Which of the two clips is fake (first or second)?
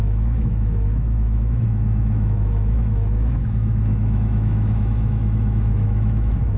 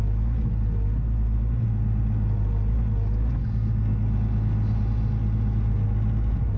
first